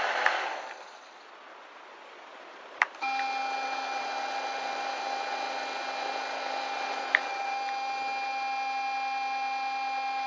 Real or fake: real